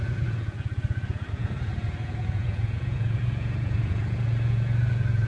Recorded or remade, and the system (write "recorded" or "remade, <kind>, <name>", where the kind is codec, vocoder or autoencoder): remade, vocoder, Vocos